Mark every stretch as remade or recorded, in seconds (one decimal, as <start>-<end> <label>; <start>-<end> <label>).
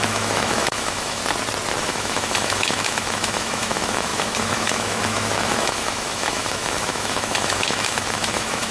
0.0-1.2 remade; 1.2-1.8 recorded; 1.8-8.7 remade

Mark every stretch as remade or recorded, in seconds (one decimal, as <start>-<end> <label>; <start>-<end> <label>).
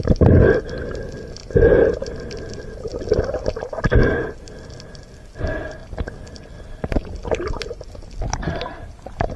0.0-9.4 recorded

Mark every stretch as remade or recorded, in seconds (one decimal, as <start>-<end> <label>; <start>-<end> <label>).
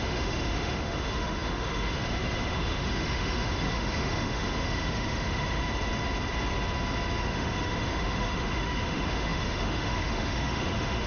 0.0-5.6 remade; 5.6-7.2 recorded; 7.2-11.1 remade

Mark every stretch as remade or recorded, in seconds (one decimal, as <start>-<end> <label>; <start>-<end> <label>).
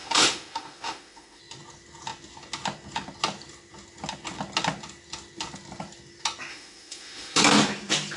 0.0-1.4 remade; 1.4-6.5 recorded; 6.5-7.4 remade; 7.4-8.2 recorded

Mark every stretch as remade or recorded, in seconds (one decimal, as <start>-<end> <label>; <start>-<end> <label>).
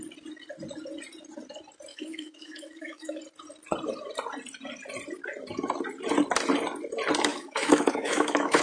0.0-1.9 recorded; 1.9-3.2 remade; 3.2-7.3 recorded; 7.3-8.6 remade